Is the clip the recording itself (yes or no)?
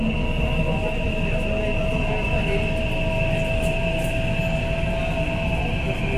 yes